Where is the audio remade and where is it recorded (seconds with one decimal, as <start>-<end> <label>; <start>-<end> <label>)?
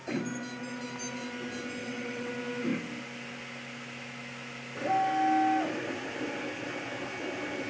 0.0-1.8 recorded; 1.8-2.3 remade; 2.3-7.7 recorded